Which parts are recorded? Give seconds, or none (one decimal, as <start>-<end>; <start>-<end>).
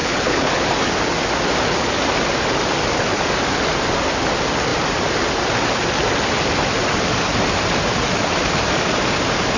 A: 0.7-9.6